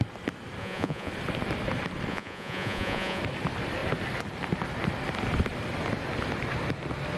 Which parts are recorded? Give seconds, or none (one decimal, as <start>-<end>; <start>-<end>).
0.0-0.6; 1.1-2.1; 3.2-7.2